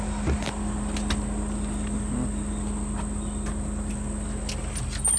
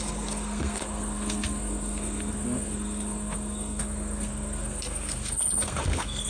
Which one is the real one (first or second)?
first